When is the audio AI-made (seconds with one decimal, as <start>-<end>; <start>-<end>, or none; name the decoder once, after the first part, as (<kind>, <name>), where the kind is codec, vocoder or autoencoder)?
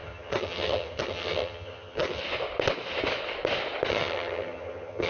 0.0-2.2 (vocoder, HiFi-GAN); 3.9-5.1